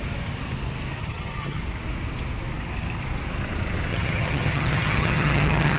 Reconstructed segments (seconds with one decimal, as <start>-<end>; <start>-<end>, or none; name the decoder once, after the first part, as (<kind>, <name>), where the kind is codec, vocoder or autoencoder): 1.0-1.6 (vocoder, HiFi-GAN); 3.9-5.8